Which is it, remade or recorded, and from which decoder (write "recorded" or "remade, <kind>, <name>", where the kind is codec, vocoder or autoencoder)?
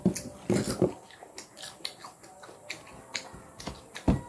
recorded